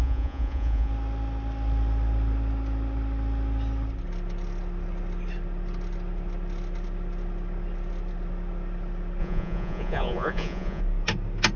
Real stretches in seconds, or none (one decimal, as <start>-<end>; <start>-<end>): 0.9-9.2; 10.8-11.6